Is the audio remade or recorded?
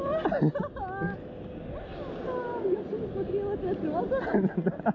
recorded